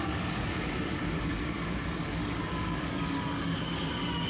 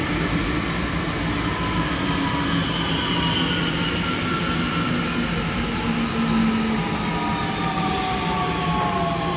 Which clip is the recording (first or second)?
second